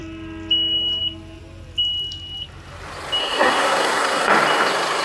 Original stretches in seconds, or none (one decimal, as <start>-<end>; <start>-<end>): 0.0-3.2; 4.3-5.0